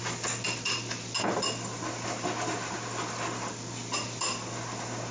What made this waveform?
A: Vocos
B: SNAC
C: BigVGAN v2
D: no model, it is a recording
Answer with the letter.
D